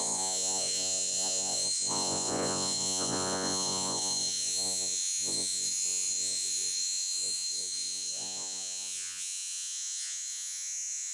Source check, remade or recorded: remade